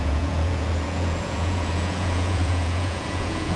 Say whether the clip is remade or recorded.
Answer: remade